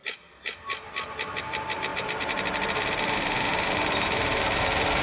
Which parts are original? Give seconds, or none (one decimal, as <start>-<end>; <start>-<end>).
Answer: none